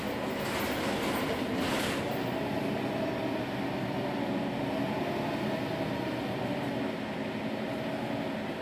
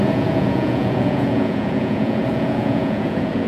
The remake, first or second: second